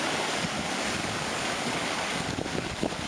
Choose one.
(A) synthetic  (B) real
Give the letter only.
A